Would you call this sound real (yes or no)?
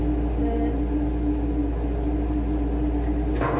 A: yes